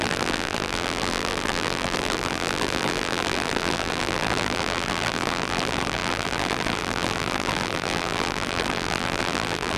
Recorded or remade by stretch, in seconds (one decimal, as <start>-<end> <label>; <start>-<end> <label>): 0.0-9.8 remade